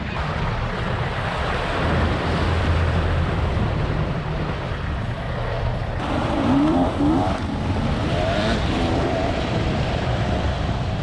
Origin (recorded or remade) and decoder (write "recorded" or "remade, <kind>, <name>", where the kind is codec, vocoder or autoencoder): remade, vocoder, BigVGAN v2